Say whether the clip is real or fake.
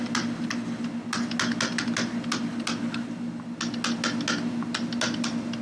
real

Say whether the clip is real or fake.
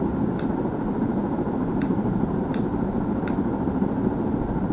real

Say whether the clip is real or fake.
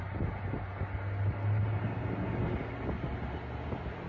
real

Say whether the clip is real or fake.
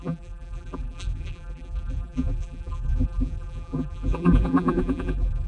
fake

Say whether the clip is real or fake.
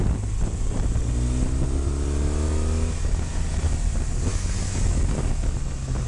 real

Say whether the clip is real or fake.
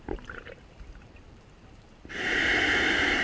fake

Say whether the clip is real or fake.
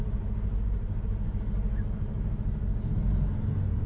real